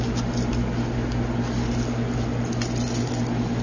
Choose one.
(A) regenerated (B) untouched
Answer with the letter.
B